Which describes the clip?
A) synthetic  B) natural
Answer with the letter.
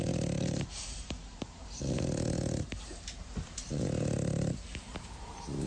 A